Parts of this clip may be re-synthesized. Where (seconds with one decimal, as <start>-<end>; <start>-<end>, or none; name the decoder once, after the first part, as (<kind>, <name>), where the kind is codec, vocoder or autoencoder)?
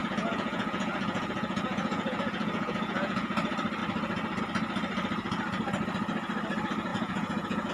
0.0-3.3 (vocoder, Vocos); 6.9-7.7